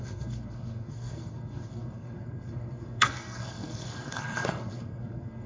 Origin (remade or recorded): remade